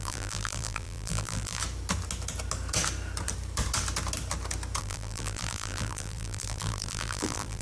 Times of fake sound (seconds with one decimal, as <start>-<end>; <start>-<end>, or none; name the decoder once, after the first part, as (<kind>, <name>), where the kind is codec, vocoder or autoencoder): 0.0-1.6 (vocoder, BigVGAN v2); 4.8-7.6